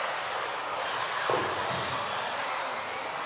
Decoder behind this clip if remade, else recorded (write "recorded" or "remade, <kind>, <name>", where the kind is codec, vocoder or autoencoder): recorded